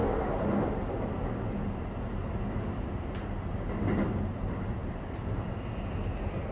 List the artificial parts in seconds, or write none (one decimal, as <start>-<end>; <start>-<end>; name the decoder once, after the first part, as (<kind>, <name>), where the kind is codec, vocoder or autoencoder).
none